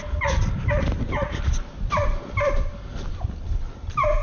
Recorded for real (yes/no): yes